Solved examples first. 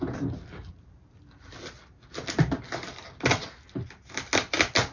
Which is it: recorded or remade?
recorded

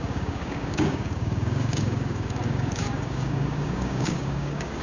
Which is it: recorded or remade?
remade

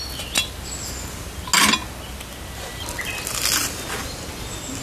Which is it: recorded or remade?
recorded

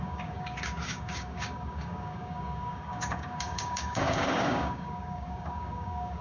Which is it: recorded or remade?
remade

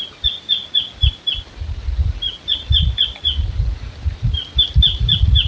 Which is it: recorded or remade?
recorded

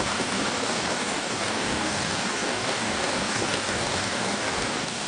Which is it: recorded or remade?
remade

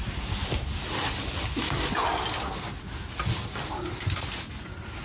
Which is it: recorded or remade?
recorded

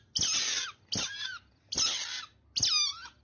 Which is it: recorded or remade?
recorded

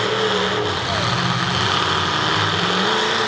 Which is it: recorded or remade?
recorded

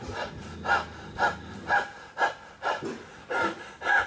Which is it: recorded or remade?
recorded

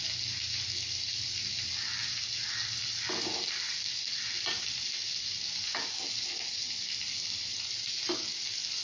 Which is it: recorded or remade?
recorded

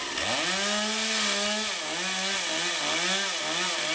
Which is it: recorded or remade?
recorded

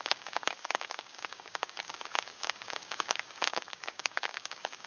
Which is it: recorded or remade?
remade